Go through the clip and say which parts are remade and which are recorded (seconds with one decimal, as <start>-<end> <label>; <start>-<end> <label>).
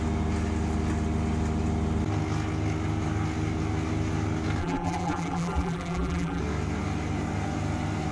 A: 0.0-4.6 recorded; 4.6-6.4 remade; 6.4-8.1 recorded